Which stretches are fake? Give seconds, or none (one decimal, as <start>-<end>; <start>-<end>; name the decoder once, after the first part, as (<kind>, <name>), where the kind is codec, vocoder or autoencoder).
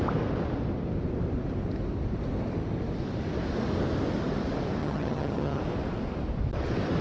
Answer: 4.8-5.6 (vocoder, HiFi-GAN)